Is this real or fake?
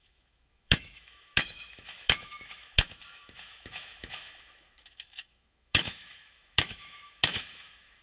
fake